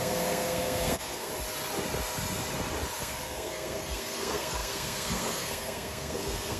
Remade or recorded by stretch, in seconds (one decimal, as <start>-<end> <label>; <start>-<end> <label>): 0.0-1.3 remade; 1.3-3.0 recorded; 3.0-6.6 remade